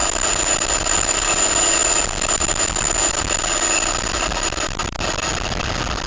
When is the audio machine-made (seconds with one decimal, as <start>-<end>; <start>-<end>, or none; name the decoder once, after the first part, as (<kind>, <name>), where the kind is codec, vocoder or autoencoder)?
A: none